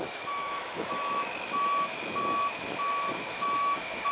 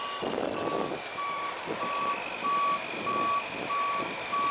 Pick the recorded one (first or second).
second